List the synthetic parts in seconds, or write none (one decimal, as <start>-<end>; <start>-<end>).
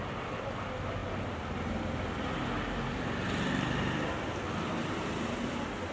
none